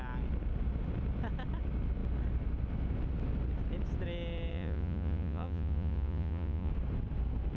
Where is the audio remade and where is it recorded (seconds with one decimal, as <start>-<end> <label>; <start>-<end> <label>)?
0.0-4.5 recorded; 4.5-6.7 remade; 6.7-7.6 recorded